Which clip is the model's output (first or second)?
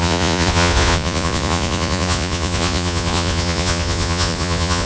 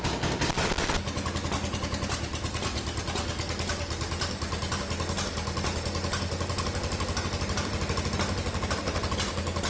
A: first